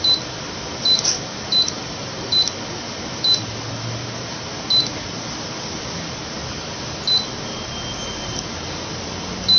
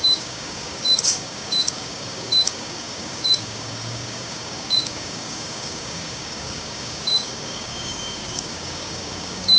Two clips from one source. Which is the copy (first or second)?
second